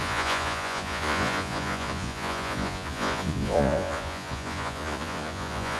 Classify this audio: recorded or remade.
remade